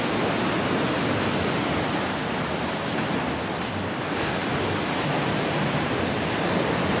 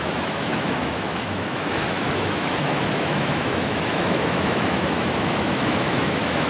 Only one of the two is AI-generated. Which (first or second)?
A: second